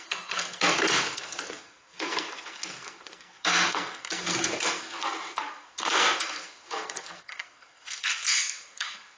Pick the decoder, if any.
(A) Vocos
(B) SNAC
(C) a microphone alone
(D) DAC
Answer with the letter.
B